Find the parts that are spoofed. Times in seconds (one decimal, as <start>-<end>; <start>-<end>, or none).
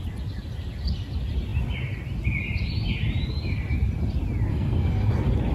4.5-5.1